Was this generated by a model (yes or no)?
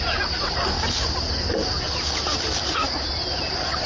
no